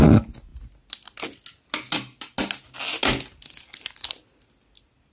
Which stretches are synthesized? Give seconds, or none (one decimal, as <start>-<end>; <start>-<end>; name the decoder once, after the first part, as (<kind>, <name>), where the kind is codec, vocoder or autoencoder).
none

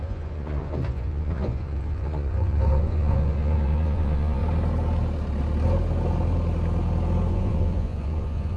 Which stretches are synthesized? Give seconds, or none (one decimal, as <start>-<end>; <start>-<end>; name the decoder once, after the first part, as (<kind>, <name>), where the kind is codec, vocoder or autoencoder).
0.0-4.4 (vocoder, Vocos); 7.3-8.6

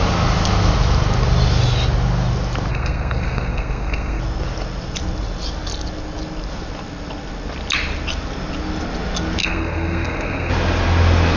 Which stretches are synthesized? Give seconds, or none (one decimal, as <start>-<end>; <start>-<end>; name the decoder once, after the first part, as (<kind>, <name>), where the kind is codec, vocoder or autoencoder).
2.7-4.2 (codec, SNAC); 9.4-10.5

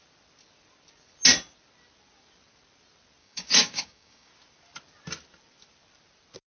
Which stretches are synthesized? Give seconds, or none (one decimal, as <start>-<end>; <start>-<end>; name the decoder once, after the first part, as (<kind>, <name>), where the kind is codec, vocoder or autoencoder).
3.2-4.3 (codec, DAC)

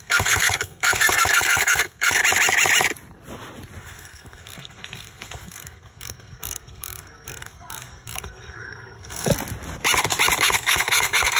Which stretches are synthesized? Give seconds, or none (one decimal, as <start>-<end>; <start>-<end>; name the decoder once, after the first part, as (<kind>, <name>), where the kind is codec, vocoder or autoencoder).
0.0-2.2 (codec, SNAC); 3.8-9.3; 10.4-11.4

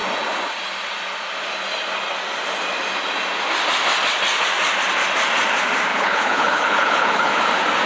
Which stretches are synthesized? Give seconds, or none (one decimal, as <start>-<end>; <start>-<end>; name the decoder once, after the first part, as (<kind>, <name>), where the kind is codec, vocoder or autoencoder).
5.9-7.4 (codec, HILCodec)

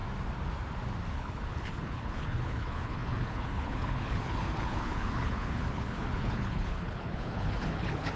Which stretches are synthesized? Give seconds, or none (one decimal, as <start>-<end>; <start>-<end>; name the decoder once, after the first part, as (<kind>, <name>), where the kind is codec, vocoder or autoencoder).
1.1-8.2 (codec, HILCodec)

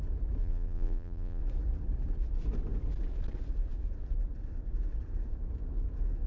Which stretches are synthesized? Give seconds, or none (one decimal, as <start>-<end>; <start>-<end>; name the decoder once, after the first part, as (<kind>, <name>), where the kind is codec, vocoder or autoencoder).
0.4-1.4 (vocoder, BigVGAN v2)